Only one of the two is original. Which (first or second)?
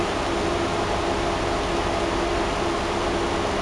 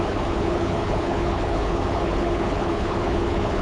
first